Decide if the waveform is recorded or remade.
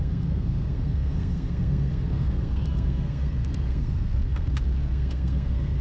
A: remade